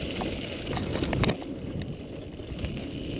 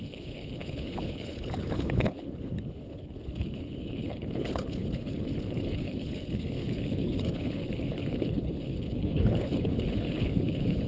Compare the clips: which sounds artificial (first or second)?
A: second